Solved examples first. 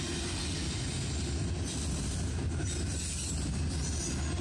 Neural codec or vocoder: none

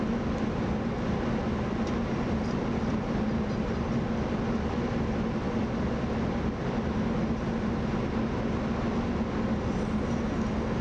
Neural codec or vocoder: none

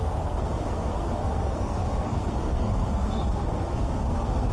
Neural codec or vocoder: codec, SNAC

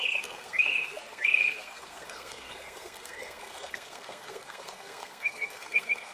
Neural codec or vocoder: codec, SNAC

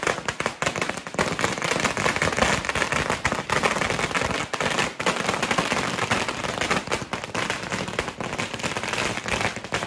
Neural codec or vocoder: none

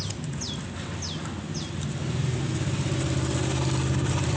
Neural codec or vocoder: none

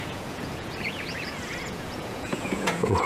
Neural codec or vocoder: vocoder, Vocos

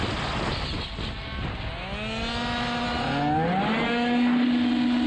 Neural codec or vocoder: none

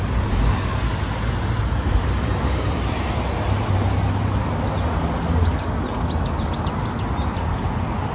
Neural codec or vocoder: none